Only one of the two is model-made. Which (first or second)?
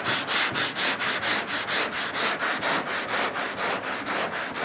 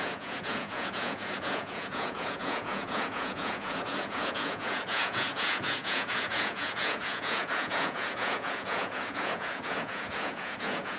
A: second